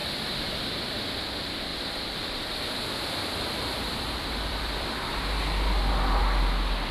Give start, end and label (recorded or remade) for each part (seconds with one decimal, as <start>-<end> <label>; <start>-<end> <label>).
0.0-1.7 recorded; 1.7-5.8 remade; 5.8-6.9 recorded

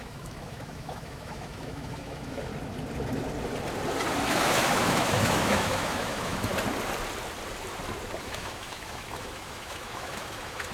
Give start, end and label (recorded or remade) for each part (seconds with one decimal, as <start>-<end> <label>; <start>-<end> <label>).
0.0-2.5 remade; 2.5-4.3 recorded; 4.3-6.5 remade; 6.5-8.2 recorded; 8.2-10.7 remade

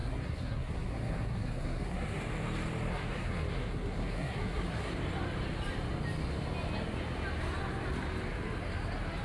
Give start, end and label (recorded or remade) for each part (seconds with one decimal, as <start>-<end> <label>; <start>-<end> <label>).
0.0-2.2 remade; 2.2-2.9 recorded; 2.9-4.9 remade; 4.9-9.2 recorded

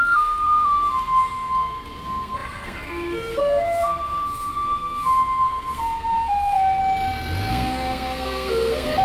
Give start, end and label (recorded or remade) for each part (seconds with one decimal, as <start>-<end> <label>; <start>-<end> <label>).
0.0-6.8 remade; 6.8-7.5 recorded; 7.5-9.0 remade

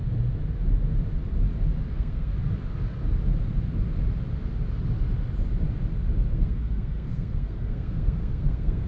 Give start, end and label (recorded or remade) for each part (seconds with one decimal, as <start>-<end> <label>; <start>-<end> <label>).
0.0-1.9 recorded; 1.9-2.3 remade; 2.3-6.3 recorded; 6.3-8.9 remade

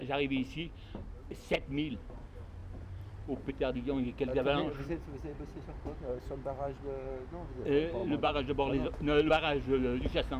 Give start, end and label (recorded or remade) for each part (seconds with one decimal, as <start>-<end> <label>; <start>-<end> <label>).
0.0-2.6 recorded; 2.6-3.5 remade; 3.5-4.3 recorded; 4.3-6.1 remade; 6.1-8.0 recorded; 8.0-9.3 remade; 9.3-10.4 recorded